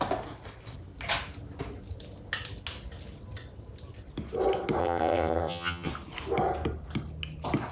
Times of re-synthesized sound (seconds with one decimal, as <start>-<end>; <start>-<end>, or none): 4.8-5.9